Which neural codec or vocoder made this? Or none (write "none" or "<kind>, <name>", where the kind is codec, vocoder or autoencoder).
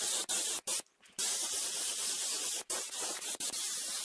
vocoder, BigVGAN v2